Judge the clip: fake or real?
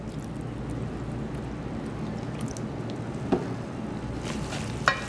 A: real